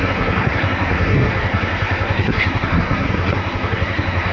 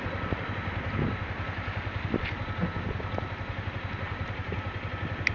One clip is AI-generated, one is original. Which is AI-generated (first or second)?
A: first